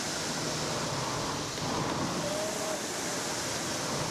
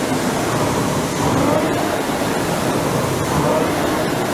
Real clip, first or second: first